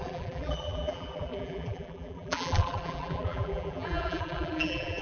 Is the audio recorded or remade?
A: remade